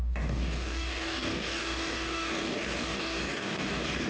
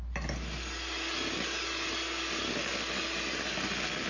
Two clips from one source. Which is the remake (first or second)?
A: first